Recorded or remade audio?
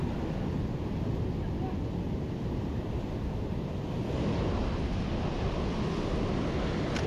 recorded